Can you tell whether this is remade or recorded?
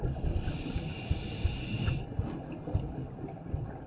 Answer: recorded